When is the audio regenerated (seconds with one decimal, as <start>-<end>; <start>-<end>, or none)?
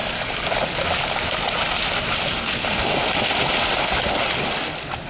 none